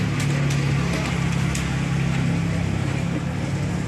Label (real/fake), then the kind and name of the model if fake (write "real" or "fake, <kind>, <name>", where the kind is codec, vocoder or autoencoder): real